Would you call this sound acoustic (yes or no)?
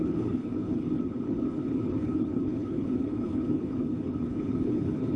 no